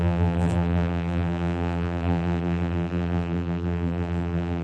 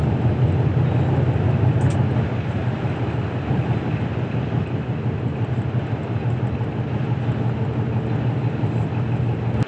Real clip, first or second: second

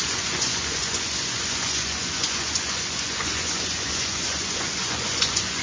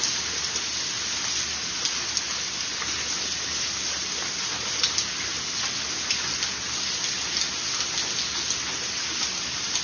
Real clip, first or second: second